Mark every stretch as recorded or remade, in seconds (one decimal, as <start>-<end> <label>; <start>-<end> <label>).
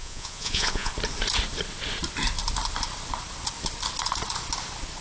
0.0-0.9 remade; 0.9-5.0 recorded